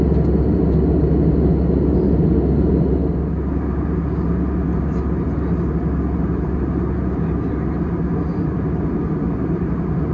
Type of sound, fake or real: real